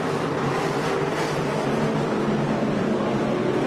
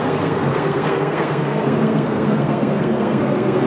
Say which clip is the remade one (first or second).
second